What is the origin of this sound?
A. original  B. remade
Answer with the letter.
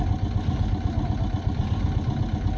A